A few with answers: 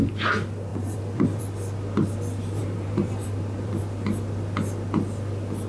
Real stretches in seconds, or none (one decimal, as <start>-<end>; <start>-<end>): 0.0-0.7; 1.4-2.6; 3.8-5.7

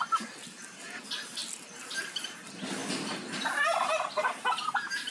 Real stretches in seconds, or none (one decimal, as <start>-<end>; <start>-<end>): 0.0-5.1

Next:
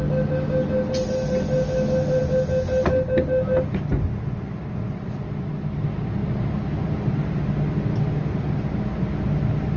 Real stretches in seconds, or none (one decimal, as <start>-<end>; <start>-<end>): 0.0-9.8